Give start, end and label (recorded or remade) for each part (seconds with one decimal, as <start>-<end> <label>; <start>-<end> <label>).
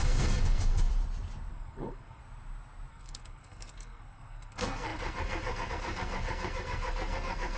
0.0-0.9 remade; 0.9-1.5 recorded; 1.5-2.2 remade; 2.2-2.9 recorded; 2.9-7.6 remade